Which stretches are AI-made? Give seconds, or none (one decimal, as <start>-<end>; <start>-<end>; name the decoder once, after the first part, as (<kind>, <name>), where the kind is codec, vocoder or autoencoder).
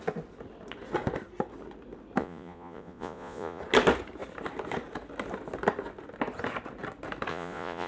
2.2-3.6 (vocoder, Vocos); 7.3-7.9